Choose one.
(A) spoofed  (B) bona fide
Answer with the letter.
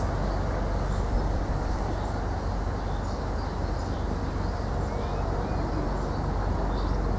B